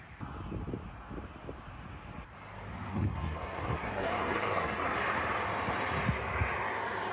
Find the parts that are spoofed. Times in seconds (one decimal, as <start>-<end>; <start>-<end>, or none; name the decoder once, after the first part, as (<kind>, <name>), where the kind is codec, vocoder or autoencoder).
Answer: 2.9-4.9 (codec, SNAC)